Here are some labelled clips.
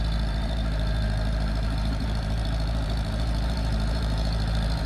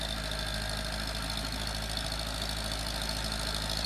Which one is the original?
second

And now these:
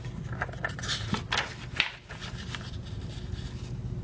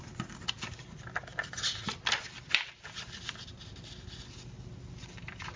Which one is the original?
first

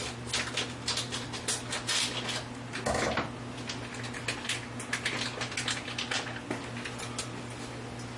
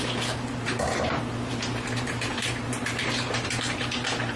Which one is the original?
first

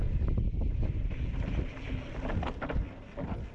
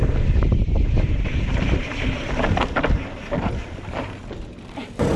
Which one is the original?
first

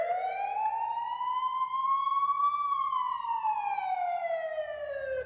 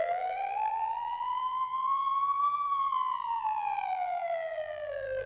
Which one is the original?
first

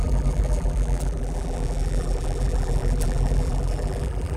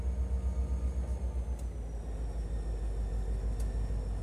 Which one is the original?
second